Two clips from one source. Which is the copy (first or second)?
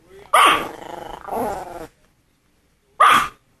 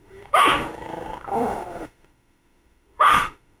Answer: second